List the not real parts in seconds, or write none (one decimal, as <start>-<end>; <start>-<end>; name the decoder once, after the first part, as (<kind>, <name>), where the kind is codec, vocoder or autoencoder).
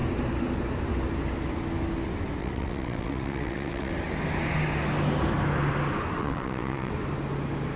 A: 2.4-3.9 (vocoder, WaveNeXt); 6.2-6.9